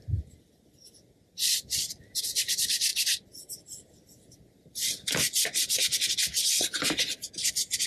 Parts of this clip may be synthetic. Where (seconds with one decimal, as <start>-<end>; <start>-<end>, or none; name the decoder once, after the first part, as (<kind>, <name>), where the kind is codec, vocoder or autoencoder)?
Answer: none